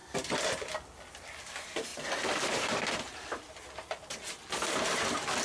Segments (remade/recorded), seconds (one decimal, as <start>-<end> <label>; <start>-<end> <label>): 0.0-1.4 recorded; 1.4-5.4 remade